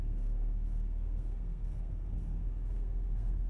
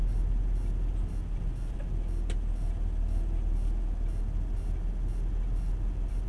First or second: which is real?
second